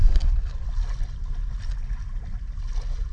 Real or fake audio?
real